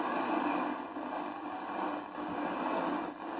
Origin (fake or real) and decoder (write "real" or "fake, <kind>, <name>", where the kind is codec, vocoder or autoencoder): real